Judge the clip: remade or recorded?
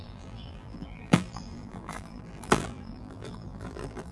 remade